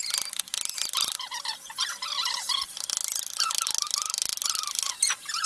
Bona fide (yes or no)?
yes